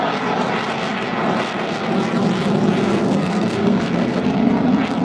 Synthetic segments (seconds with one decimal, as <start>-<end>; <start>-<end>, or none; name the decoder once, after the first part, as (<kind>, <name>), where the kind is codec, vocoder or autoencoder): 2.8-4.2 (codec, SNAC)